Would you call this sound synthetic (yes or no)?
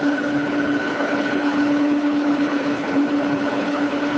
yes